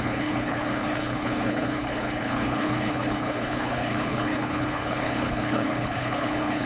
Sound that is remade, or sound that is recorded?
remade